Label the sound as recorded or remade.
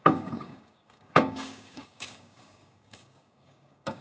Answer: remade